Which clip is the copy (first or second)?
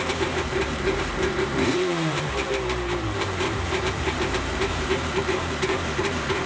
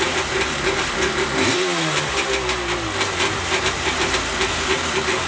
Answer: first